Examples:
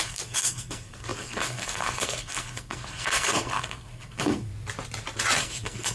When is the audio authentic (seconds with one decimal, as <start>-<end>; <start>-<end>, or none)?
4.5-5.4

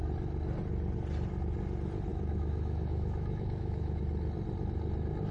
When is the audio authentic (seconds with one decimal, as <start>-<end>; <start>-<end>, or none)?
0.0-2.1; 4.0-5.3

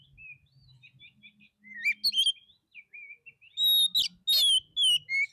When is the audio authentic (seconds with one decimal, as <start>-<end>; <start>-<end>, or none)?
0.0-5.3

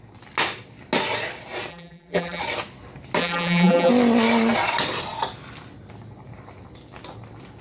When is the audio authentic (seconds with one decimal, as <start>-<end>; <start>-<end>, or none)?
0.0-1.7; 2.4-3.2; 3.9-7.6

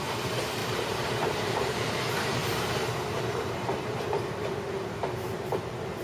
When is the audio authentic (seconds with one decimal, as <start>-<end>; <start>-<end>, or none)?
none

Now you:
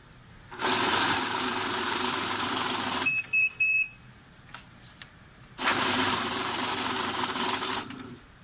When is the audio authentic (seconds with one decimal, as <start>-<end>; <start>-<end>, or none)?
none

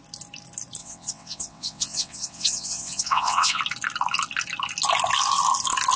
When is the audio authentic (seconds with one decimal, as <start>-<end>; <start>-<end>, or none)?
0.0-0.8; 3.6-6.0

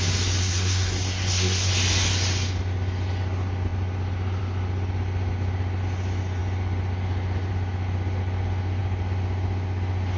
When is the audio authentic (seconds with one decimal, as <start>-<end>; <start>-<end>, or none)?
0.0-0.4; 1.7-10.2